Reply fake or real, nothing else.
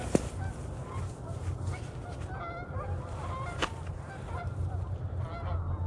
real